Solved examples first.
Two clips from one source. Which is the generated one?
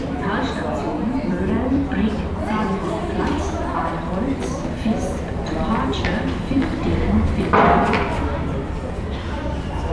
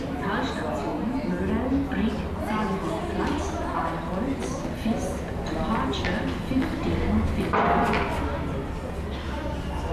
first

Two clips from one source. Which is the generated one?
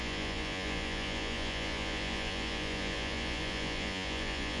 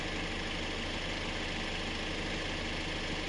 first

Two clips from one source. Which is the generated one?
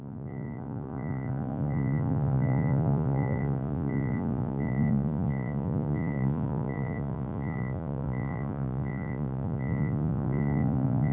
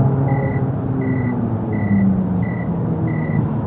first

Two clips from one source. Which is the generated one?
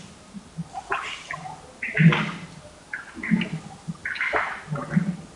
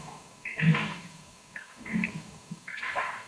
second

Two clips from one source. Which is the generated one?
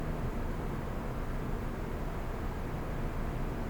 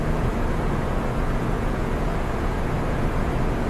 second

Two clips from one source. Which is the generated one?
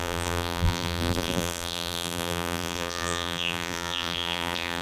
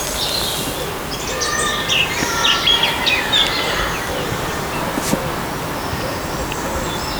first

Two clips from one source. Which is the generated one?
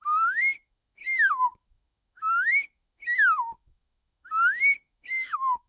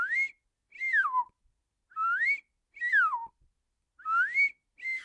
first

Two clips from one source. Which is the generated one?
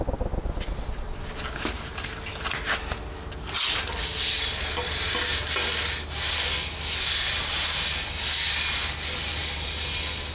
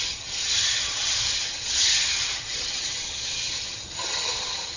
second